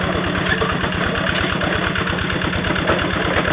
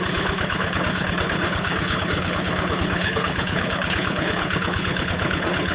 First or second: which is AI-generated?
second